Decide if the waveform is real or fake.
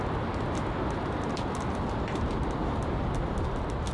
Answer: real